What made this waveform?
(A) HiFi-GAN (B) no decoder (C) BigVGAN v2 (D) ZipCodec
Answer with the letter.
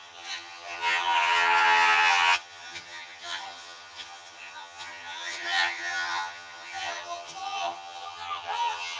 A